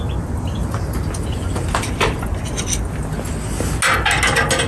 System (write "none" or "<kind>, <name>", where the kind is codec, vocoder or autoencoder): none